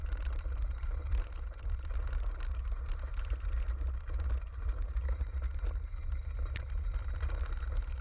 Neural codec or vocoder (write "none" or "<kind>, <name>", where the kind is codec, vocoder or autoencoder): none